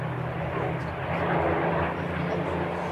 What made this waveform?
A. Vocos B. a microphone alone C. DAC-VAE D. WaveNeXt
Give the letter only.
B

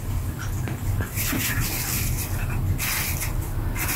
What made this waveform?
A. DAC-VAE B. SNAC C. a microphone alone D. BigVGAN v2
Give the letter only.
C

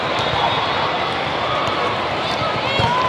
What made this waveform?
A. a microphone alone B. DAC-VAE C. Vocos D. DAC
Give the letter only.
A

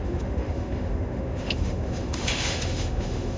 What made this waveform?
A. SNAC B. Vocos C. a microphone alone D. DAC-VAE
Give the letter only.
D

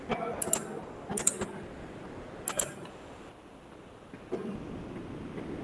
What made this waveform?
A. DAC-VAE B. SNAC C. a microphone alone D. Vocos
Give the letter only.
C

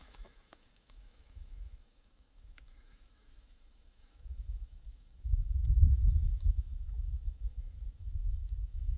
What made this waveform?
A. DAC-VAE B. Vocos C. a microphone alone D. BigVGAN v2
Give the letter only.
A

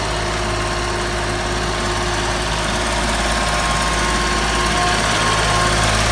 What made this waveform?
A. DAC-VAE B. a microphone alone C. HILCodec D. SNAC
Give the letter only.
B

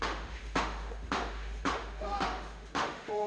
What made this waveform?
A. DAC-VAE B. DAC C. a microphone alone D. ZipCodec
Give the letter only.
A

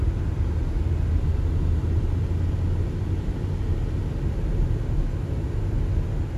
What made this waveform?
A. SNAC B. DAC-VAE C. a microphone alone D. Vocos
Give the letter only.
C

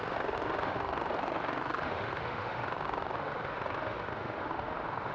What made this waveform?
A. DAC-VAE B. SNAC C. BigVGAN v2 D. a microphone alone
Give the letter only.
A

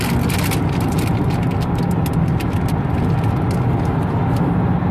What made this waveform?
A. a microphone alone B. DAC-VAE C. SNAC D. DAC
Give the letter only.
A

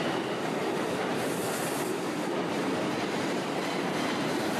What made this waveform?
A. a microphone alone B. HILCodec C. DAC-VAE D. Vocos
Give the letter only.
A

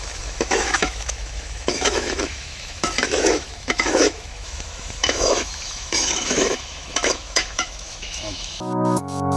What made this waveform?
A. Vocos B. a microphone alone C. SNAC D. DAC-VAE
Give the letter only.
D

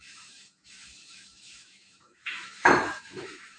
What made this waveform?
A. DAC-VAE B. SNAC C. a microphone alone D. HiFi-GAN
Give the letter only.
A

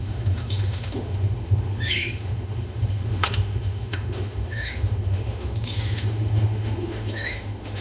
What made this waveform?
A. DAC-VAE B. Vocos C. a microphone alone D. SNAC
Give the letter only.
A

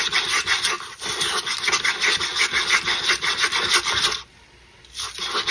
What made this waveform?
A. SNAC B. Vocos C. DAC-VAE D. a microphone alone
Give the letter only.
D